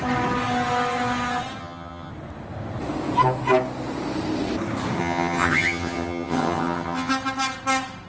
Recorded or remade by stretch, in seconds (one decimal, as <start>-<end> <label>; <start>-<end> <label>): 0.0-1.6 recorded; 1.6-2.1 remade; 2.1-5.0 recorded; 5.0-7.1 remade; 7.1-8.1 recorded